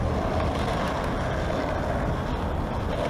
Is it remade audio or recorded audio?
recorded